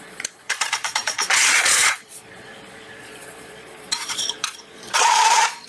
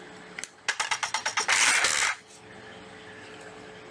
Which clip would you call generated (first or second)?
first